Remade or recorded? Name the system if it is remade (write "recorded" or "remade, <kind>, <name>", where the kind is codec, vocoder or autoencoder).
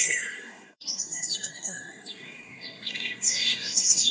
remade, codec, SNAC